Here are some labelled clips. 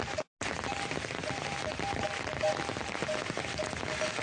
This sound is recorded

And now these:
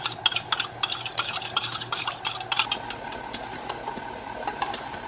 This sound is remade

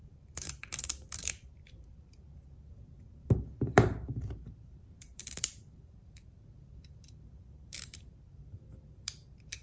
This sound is remade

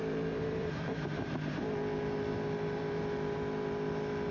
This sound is remade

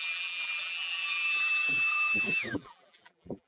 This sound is remade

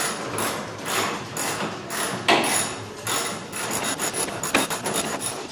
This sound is recorded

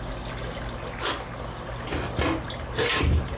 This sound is recorded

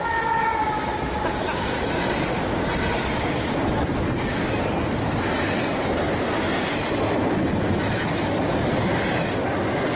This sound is recorded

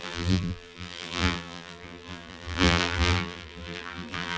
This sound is remade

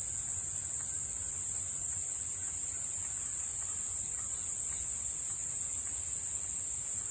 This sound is recorded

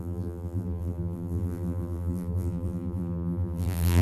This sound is remade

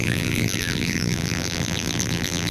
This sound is remade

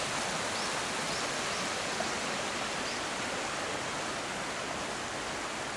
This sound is recorded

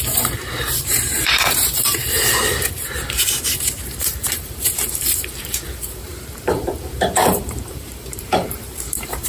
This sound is remade